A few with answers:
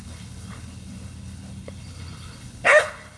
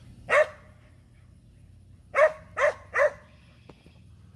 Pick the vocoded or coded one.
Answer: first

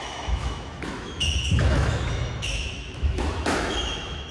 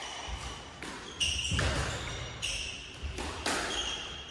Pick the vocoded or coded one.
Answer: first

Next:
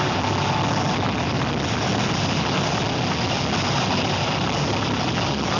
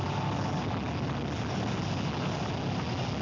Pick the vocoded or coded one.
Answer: first